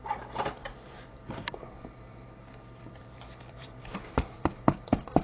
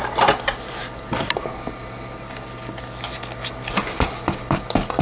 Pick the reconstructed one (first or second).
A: first